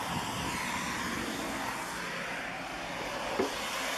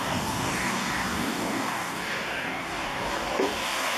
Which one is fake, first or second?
second